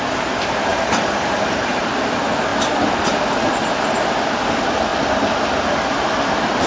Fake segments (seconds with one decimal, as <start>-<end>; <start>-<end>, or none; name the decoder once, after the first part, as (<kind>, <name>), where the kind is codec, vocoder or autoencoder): 0.7-1.8 (vocoder, BigVGAN v2)